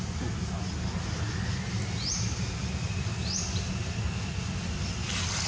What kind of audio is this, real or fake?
real